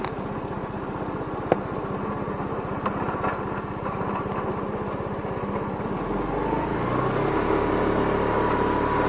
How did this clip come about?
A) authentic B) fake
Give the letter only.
A